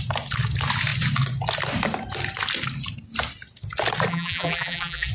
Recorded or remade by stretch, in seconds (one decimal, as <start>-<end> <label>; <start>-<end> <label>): 0.0-4.1 recorded; 4.1-5.1 remade